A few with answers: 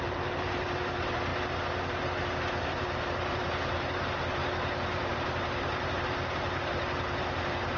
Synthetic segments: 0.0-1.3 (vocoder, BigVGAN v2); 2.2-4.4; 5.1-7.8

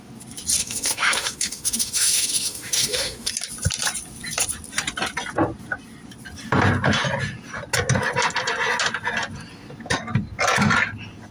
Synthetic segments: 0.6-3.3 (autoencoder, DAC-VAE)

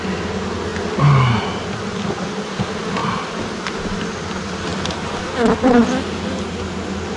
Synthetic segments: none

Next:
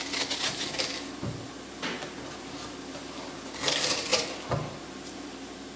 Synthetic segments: none

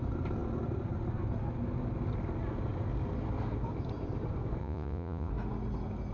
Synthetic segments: 4.6-5.3 (vocoder, Vocos)

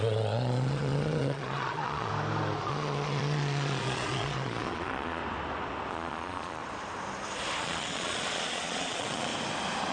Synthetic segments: 0.0-2.1 (vocoder, Vocos); 2.6-5.2; 5.9-6.6; 7.6-9.3

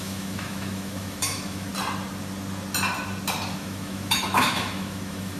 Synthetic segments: 0.0-1.7 (autoencoder, DAC-VAE); 3.5-5.4

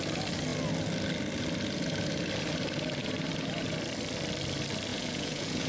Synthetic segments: 4.9-5.7 (vocoder, Vocos)